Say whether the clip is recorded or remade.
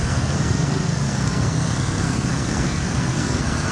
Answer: remade